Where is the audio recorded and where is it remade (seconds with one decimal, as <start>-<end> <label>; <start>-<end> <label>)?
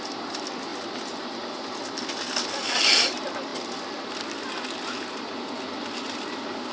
0.0-6.7 recorded